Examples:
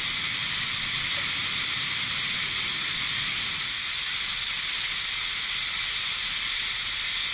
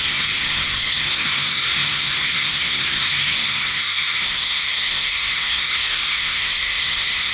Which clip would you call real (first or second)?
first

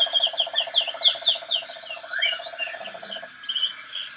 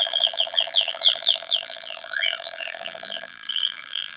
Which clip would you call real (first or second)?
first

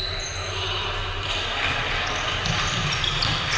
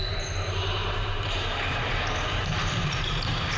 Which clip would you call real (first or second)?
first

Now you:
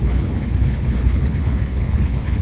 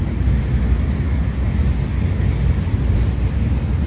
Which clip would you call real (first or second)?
second